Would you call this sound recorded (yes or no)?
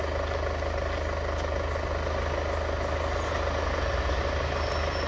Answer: yes